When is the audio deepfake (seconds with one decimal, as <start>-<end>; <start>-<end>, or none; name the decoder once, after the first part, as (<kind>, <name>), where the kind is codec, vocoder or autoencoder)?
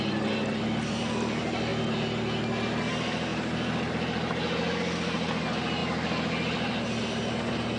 3.3-3.9 (vocoder, BigVGAN v2)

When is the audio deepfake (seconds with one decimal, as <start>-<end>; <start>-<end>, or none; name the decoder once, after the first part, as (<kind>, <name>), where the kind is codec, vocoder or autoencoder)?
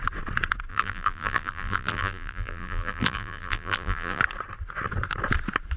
0.7-4.2 (vocoder, BigVGAN v2)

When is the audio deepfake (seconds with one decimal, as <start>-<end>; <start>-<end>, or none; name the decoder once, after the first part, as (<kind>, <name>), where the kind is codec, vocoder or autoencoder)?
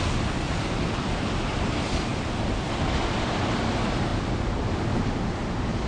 none